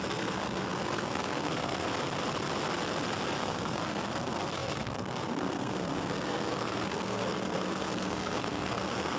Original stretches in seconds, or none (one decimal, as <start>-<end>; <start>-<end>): 1.9-3.4